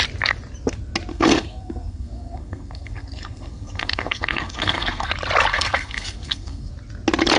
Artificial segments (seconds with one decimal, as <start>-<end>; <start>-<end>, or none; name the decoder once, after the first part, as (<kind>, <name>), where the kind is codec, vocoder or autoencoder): 1.1-5.1 (codec, SNAC); 5.5-6.7